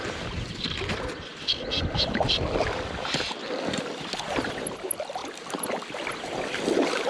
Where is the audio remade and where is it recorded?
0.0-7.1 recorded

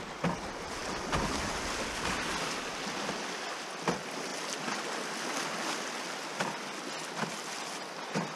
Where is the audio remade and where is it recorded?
0.0-8.4 recorded

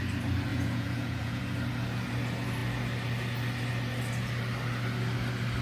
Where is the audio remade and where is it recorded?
0.0-0.5 recorded; 0.5-1.4 remade; 1.4-5.6 recorded

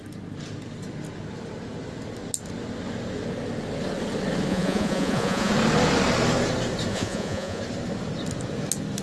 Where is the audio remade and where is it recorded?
0.0-4.5 recorded; 4.5-5.5 remade; 5.5-6.9 recorded; 6.9-7.6 remade; 7.6-9.0 recorded

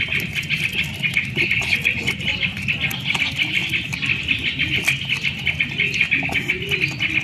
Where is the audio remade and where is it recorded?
0.0-7.2 recorded

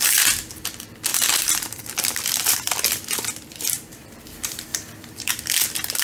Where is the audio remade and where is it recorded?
0.0-6.0 remade

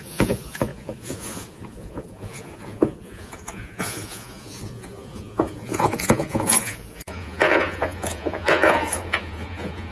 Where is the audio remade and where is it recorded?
0.0-9.9 remade